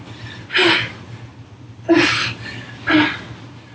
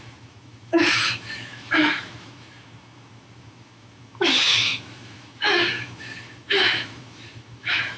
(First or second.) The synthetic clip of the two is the second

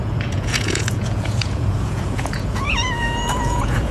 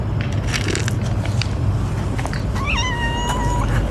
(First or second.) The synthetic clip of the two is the first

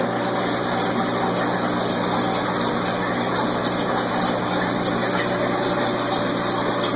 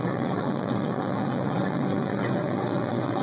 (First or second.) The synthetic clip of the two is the second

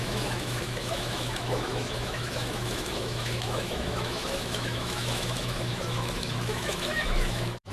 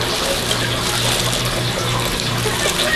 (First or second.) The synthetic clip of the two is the first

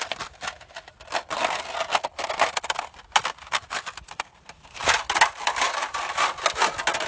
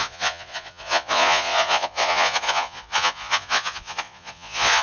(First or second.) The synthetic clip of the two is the second